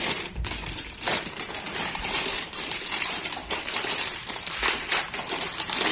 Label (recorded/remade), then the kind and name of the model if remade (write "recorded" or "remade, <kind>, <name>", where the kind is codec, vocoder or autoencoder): remade, vocoder, BigVGAN v2